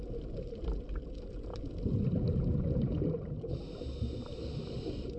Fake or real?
real